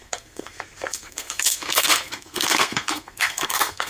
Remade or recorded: remade